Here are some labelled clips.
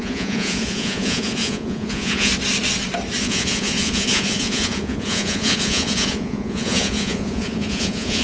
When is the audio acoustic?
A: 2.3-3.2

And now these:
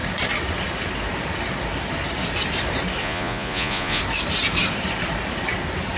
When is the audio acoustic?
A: 0.0-3.0; 4.0-6.0

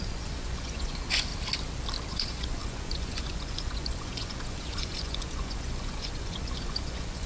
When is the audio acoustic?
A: 1.3-2.1

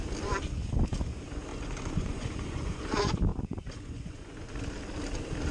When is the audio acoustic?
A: 0.0-1.5; 2.8-3.3; 4.5-5.5

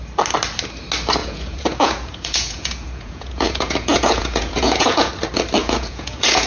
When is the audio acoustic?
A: 0.0-1.2; 5.1-5.6

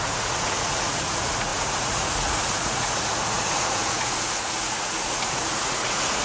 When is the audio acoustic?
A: none